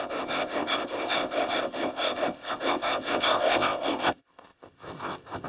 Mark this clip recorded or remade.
remade